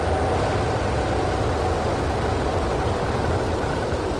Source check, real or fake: real